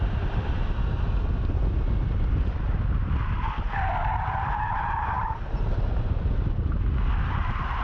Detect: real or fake real